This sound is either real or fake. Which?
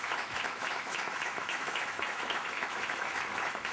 fake